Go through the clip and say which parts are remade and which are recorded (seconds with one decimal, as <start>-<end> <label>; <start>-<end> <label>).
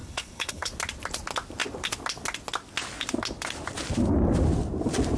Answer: 0.0-0.7 remade; 0.7-5.2 recorded